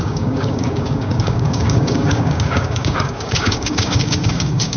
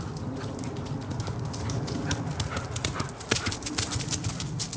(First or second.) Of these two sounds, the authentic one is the second